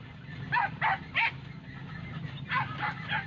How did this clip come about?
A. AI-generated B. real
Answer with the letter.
B